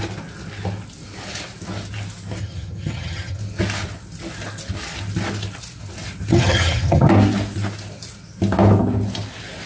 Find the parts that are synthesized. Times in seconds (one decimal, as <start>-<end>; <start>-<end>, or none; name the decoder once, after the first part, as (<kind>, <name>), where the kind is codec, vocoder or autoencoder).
2.4-3.4 (vocoder, HiFi-GAN); 6.3-7.1